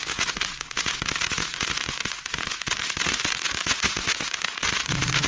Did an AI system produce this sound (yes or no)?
yes